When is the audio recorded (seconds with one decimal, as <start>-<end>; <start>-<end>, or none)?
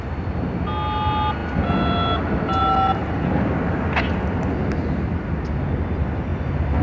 0.0-6.8